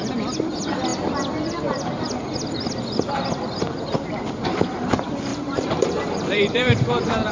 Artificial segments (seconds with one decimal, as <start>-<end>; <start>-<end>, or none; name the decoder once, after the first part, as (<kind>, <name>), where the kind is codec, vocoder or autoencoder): 5.3-7.3 (vocoder, BigVGAN v2)